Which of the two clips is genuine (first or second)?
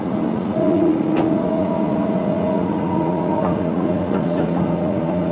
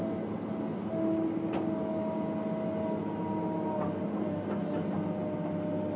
second